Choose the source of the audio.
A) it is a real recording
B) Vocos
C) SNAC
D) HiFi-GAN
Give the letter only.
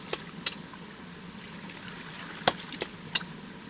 A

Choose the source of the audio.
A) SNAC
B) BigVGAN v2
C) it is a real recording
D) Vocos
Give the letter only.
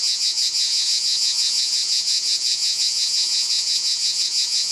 D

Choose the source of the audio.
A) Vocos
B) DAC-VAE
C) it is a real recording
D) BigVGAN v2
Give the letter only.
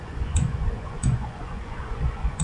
A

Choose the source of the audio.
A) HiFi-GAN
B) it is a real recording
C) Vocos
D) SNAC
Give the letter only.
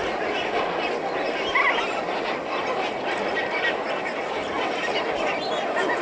B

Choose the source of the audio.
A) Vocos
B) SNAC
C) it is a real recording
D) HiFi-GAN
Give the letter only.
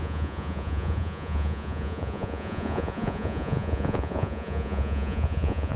A